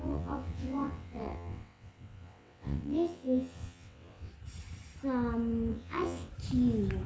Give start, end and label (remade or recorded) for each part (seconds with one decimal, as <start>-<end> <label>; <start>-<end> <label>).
0.0-4.3 remade; 4.3-5.7 recorded; 5.7-6.3 remade; 6.3-7.1 recorded